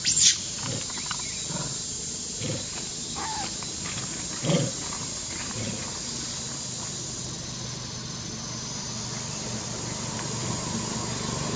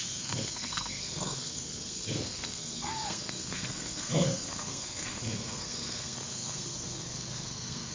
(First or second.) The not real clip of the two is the second